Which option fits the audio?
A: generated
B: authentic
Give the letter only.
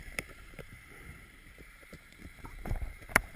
A